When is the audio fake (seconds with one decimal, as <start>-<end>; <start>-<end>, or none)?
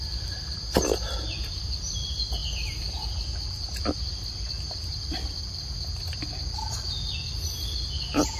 none